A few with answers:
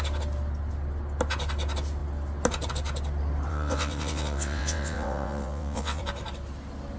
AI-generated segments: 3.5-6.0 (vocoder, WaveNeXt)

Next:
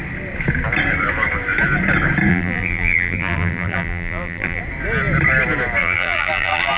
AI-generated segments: 2.3-4.6 (vocoder, BigVGAN v2); 5.8-6.8